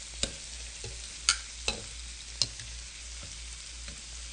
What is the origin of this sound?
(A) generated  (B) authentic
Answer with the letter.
B